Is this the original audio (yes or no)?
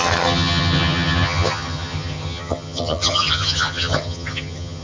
no